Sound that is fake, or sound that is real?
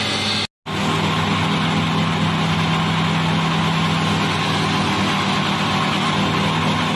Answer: real